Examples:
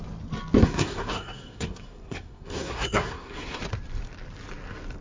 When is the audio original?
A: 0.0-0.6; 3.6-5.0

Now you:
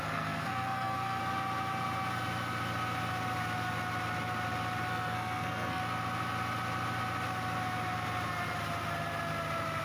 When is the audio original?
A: 1.2-4.9; 5.8-9.8